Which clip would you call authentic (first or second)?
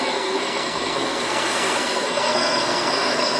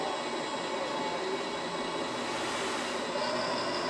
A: second